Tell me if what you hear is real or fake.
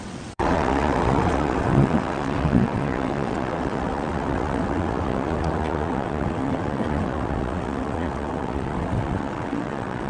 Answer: fake